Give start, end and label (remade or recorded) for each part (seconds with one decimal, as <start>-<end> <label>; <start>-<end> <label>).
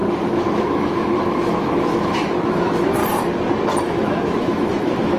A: 0.0-3.0 remade; 3.0-3.8 recorded; 3.8-5.2 remade